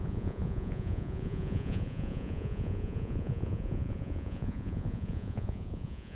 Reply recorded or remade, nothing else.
remade